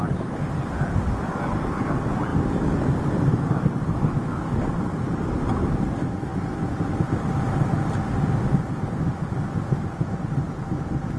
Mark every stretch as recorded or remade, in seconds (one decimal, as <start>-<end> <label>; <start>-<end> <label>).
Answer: 0.0-11.2 recorded